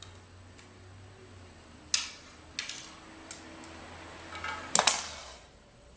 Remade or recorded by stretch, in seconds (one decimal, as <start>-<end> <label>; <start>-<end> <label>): 0.0-5.2 recorded; 5.2-6.0 remade